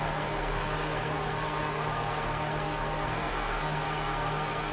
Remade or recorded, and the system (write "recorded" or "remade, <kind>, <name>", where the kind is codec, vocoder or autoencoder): remade, codec, SNAC